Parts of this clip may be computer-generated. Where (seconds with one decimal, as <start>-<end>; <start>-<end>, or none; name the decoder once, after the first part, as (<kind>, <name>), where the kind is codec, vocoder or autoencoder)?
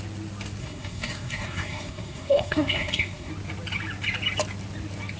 0.6-3.3 (codec, SNAC)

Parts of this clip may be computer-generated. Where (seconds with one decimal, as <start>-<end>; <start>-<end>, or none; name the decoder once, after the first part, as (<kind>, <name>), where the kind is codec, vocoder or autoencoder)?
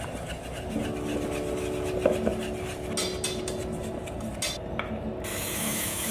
5.3-6.1 (autoencoder, DAC-VAE)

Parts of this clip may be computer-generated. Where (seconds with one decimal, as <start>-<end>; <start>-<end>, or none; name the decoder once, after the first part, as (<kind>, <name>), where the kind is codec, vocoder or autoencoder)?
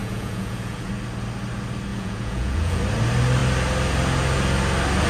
0.0-0.9 (vocoder, Vocos); 1.9-2.8